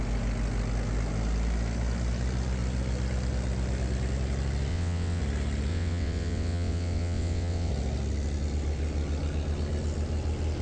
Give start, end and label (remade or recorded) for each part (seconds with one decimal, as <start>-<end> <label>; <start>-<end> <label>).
0.0-4.7 recorded; 4.7-5.2 remade; 5.2-5.7 recorded; 5.7-7.7 remade; 7.7-10.6 recorded